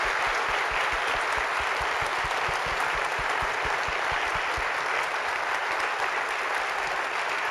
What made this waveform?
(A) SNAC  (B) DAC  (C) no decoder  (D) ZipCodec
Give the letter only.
C